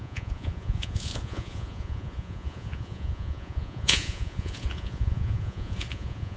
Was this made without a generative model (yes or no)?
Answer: no